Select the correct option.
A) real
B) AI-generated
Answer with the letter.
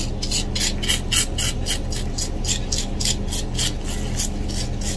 A